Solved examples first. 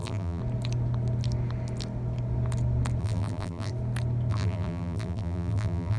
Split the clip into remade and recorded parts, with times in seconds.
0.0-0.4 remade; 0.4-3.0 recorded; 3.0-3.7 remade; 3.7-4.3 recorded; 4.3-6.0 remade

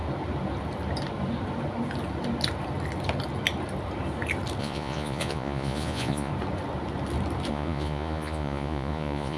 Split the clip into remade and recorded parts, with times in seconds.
0.0-4.6 recorded; 4.6-6.3 remade; 6.3-7.5 recorded; 7.5-9.4 remade